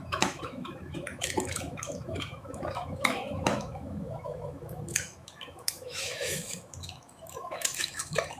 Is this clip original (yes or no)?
no